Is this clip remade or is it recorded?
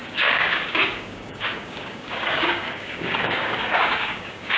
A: remade